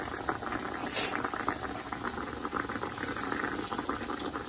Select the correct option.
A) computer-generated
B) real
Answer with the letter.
B